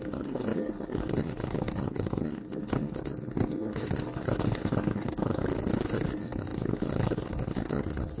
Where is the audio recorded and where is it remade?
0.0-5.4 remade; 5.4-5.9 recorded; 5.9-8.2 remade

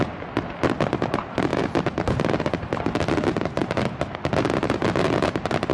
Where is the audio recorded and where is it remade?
0.0-5.7 recorded

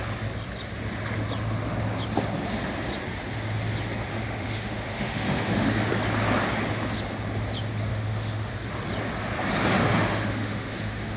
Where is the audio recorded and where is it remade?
0.0-4.1 recorded; 4.1-5.9 remade; 5.9-7.9 recorded; 7.9-8.5 remade; 8.5-9.8 recorded; 9.8-11.2 remade